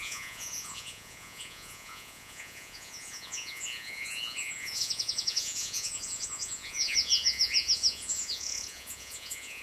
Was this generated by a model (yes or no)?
yes